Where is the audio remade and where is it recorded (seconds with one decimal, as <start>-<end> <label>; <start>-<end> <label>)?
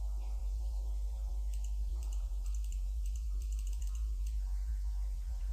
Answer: 0.0-0.4 recorded; 0.4-1.3 remade; 1.3-1.9 recorded; 1.9-5.5 remade